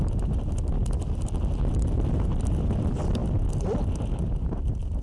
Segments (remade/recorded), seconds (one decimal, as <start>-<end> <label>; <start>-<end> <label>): 0.0-5.0 recorded